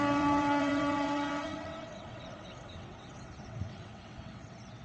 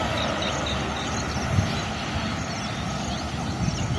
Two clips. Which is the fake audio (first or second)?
first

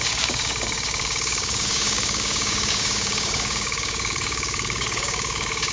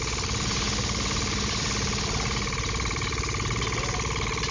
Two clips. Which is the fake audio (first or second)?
first